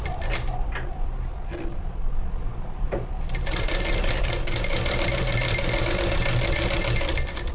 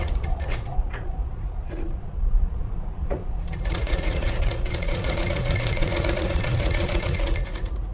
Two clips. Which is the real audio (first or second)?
first